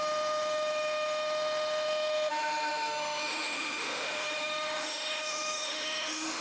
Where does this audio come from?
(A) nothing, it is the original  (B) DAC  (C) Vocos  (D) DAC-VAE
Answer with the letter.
D